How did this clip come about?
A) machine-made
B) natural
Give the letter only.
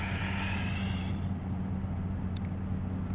B